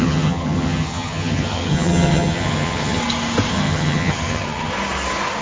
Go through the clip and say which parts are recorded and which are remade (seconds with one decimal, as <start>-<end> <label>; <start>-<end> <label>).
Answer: 0.0-3.0 remade; 3.0-3.5 recorded; 3.5-4.7 remade; 4.7-5.4 recorded